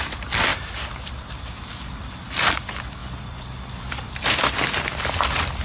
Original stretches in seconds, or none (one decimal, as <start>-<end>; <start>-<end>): 3.0-3.7